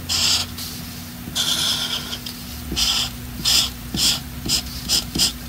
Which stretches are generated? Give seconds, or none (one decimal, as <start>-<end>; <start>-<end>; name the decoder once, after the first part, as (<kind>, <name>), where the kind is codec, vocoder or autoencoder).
0.0-0.4 (vocoder, BigVGAN v2); 2.9-5.5